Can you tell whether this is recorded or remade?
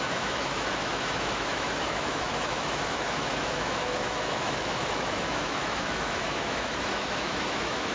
remade